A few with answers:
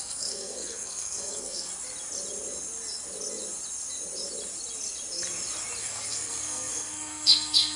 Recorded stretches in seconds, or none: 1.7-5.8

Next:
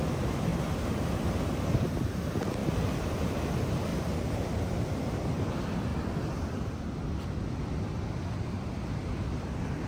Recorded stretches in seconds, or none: 0.0-2.6; 3.3-3.9; 4.8-9.9

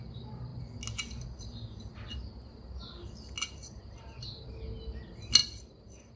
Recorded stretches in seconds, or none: 0.0-6.2

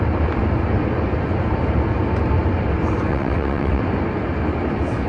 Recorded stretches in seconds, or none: 0.0-3.1; 3.8-5.1

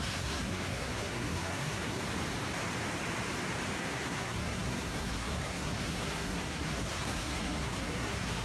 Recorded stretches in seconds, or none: 2.0-3.8

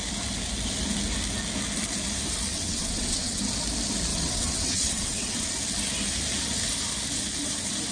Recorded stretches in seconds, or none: 0.0-2.5; 3.4-4.1; 5.5-7.9

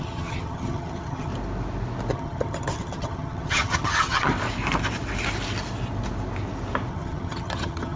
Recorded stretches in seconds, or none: 1.3-2.1; 4.3-6.9

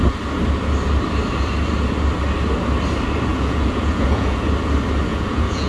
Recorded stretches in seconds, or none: 0.0-3.3; 4.4-5.1